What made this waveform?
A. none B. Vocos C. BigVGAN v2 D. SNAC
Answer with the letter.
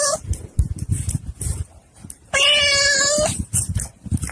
A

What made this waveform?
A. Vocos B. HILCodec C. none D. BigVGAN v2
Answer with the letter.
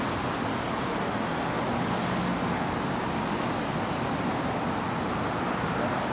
C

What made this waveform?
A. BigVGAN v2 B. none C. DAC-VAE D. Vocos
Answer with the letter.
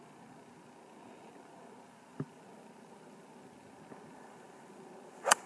B